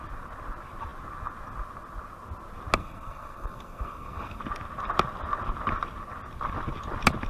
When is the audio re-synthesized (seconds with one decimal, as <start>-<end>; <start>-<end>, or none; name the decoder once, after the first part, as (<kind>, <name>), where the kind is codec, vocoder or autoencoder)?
2.8-4.4 (codec, SNAC)